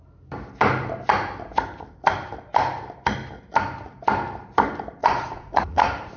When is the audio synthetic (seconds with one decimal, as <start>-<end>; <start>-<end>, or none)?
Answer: 5.0-6.2